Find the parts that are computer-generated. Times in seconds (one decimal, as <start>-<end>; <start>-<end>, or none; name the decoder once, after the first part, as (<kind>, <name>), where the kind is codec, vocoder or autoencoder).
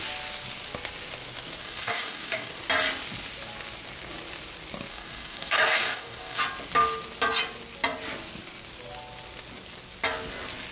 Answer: 1.6-2.5 (codec, DAC); 4.9-6.4